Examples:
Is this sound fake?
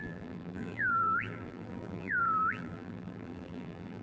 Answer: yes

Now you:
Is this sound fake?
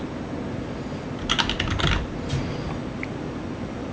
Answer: no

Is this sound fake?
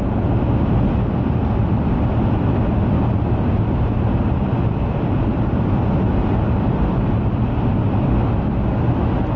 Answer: no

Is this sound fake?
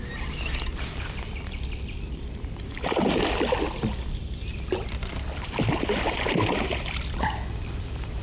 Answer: yes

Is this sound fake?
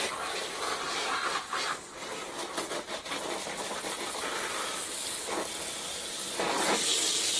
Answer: no